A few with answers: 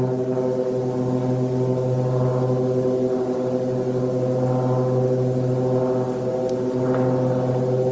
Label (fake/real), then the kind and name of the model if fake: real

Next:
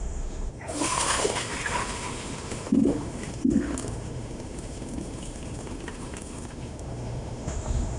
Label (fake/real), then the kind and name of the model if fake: fake, autoencoder, DAC-VAE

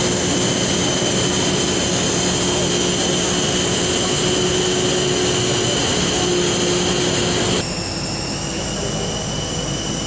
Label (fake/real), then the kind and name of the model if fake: real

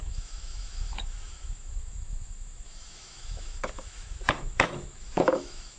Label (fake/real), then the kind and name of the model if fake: fake, autoencoder, DAC-VAE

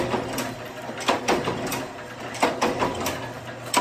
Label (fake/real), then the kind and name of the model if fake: real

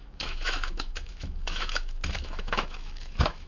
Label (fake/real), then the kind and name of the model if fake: fake, autoencoder, DAC-VAE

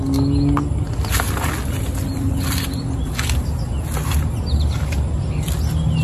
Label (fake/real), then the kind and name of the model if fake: real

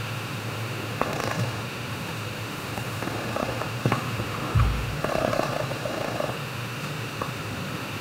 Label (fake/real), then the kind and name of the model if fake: fake, autoencoder, DAC-VAE